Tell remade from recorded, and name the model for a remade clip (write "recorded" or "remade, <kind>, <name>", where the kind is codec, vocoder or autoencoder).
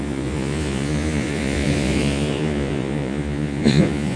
remade, vocoder, Vocos